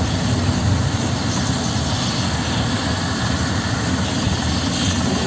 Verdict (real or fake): real